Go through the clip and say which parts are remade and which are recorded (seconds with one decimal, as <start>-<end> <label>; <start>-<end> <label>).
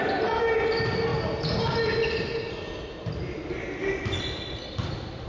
0.0-5.3 recorded